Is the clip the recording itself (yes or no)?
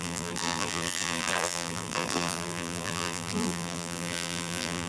no